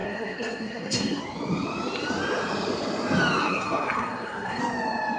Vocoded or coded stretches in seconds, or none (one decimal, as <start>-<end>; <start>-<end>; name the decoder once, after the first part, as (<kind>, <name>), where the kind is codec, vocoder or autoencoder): 0.0-1.2 (codec, SNAC); 3.4-4.6